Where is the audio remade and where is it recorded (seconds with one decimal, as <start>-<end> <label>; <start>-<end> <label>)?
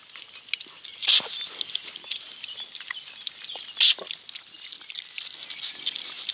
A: 0.0-6.3 recorded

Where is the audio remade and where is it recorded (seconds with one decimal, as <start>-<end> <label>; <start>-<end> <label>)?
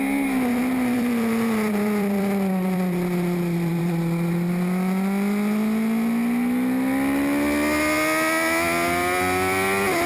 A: 0.0-0.5 recorded; 0.5-3.8 remade; 3.8-10.1 recorded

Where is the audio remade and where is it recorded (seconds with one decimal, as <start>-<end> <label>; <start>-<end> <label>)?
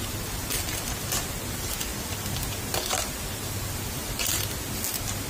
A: 0.0-5.3 recorded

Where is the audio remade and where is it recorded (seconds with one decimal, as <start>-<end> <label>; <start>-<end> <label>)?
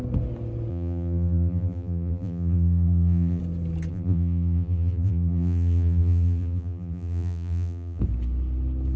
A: 0.0-0.7 recorded; 0.7-3.4 remade; 3.4-3.9 recorded; 3.9-8.0 remade; 8.0-9.0 recorded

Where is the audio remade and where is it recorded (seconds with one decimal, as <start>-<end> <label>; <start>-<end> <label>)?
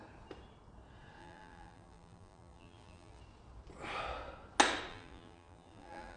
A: 0.0-1.2 recorded; 1.2-3.2 remade; 3.2-4.9 recorded; 4.9-6.2 remade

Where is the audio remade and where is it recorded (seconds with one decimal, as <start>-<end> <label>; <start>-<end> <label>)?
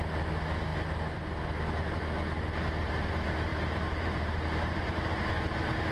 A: 0.0-3.5 recorded; 3.5-5.0 remade; 5.0-5.9 recorded